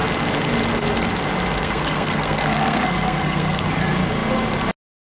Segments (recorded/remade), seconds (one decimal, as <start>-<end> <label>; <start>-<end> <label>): 0.0-1.6 recorded; 1.6-3.6 remade; 3.6-5.0 recorded